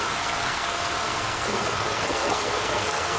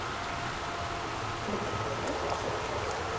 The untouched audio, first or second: second